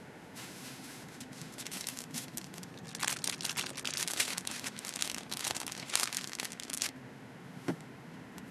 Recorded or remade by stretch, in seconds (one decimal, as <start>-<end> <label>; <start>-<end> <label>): 0.0-2.7 remade; 2.7-4.0 recorded; 4.0-8.5 remade